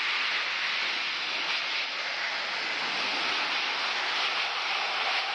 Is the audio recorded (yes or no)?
yes